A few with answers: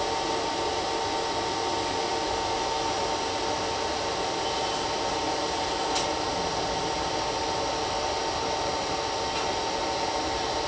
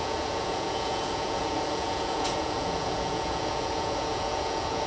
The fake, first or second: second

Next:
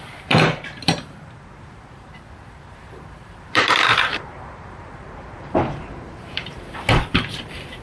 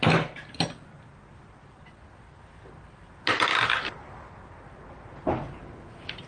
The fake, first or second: first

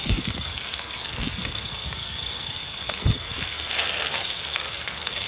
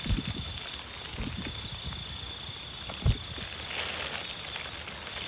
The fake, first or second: first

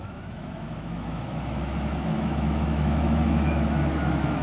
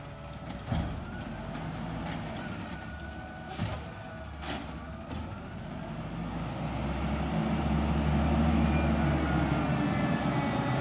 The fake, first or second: first